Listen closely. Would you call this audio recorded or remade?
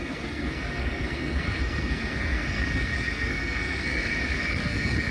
remade